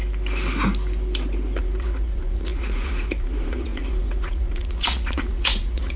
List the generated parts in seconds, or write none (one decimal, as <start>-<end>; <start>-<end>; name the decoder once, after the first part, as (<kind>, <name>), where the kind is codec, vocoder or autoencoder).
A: 1.6-6.0 (vocoder, Vocos)